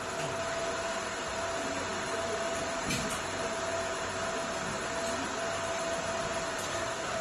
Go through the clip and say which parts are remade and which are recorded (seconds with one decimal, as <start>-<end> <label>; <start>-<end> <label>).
0.0-6.7 recorded; 6.7-7.2 remade